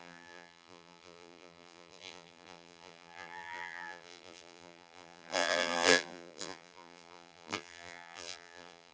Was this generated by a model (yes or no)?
yes